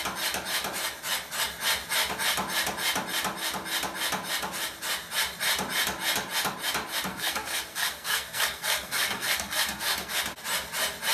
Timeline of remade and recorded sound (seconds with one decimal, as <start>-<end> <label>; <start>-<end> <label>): 0.0-7.1 recorded; 7.1-10.2 remade; 10.2-11.1 recorded